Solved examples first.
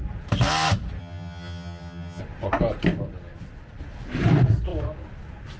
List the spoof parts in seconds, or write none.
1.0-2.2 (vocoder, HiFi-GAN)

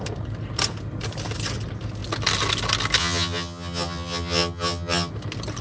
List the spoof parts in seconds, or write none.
3.0-5.1 (vocoder, HiFi-GAN)

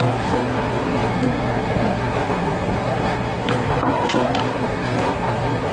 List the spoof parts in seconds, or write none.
0.0-5.7 (codec, SNAC)

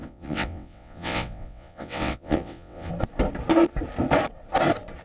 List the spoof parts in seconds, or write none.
0.0-2.9 (vocoder, WaveNeXt)

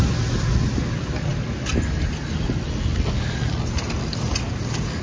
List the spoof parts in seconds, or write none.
none

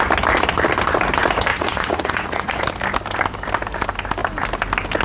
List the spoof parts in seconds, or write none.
1.5-2.6 (vocoder, Vocos)

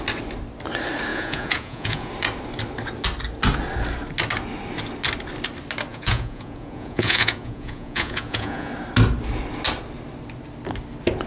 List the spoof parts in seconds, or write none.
1.1-2.1 (vocoder, Vocos); 5.9-8.7

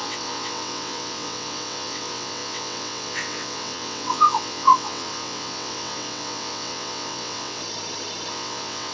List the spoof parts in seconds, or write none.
0.0-7.6 (vocoder, WaveNeXt); 8.3-8.9